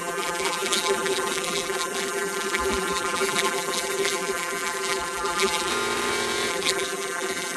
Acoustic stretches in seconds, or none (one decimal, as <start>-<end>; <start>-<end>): 5.7-6.5